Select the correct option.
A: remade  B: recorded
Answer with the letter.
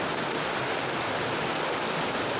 B